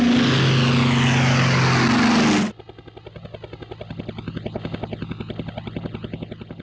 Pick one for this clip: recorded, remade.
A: recorded